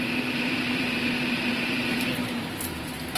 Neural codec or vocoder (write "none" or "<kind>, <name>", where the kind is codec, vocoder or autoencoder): vocoder, BigVGAN v2